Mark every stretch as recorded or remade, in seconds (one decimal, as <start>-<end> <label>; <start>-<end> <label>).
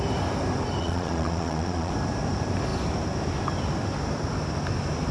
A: 0.0-0.8 recorded; 0.8-1.9 remade; 1.9-5.1 recorded